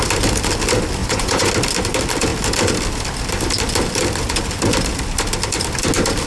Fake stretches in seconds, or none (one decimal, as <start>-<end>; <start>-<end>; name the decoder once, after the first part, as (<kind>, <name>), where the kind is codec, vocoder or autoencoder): 1.0-1.5 (vocoder, Vocos)